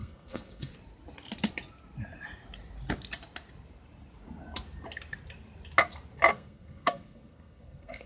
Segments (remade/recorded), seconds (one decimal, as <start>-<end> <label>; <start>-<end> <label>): 0.0-0.7 remade; 0.7-6.3 recorded; 6.3-8.1 remade